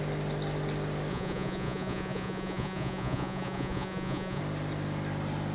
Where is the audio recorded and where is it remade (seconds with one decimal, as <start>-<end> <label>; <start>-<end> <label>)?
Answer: 0.0-1.1 recorded; 1.1-4.4 remade; 4.4-5.5 recorded